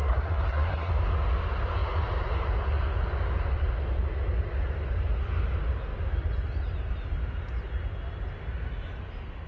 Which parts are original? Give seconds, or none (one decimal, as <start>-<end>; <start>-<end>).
0.9-9.5